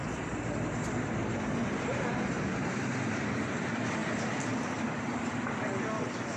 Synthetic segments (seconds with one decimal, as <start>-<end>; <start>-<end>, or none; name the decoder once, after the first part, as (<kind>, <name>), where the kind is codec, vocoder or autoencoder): 4.0-5.2 (vocoder, BigVGAN v2)